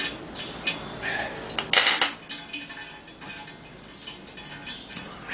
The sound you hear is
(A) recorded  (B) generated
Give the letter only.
A